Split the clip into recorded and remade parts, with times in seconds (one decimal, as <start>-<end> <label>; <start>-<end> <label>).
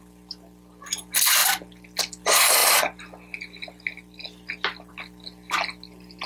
0.0-6.3 recorded